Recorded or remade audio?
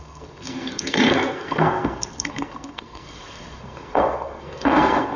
remade